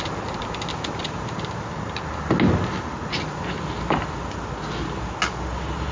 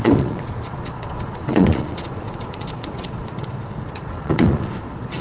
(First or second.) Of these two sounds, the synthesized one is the second